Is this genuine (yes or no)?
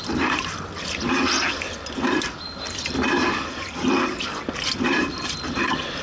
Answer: yes